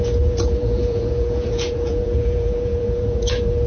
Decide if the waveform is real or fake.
fake